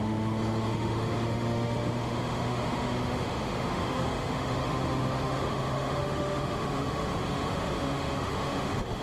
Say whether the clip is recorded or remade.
remade